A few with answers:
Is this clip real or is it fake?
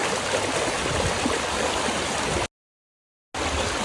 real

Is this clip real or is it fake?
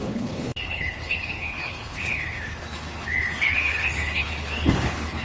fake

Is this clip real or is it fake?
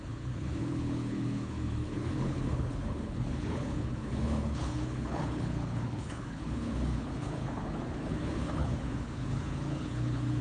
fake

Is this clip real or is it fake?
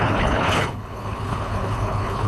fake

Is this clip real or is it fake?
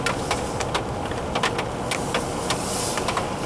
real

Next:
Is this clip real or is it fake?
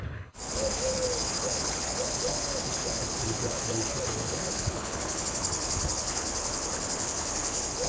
fake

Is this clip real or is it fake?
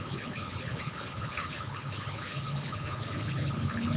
fake